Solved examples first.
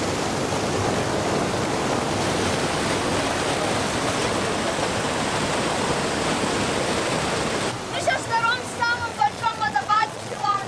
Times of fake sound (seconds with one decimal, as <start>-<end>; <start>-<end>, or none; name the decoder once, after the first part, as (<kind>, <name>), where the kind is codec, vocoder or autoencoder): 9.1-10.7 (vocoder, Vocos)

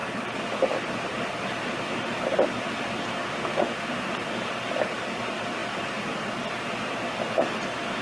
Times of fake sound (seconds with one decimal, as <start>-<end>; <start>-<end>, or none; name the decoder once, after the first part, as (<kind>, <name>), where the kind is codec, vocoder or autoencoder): 3.3-4.0 (autoencoder, DAC-VAE)

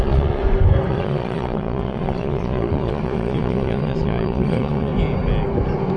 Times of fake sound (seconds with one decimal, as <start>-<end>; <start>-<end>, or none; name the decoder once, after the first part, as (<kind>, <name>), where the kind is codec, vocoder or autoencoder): 0.0-0.4 (vocoder, Vocos); 0.9-4.9

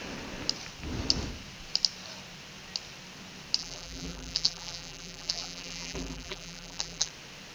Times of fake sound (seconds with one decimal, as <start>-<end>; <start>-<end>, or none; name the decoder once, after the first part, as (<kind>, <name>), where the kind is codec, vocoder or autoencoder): 3.6-7.1 (vocoder, BigVGAN v2)